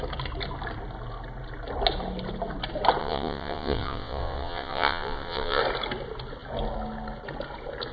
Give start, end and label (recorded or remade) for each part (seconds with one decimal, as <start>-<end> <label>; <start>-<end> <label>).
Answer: 0.0-3.0 recorded; 3.0-5.6 remade; 5.6-7.9 recorded